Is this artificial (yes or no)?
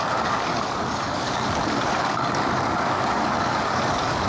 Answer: yes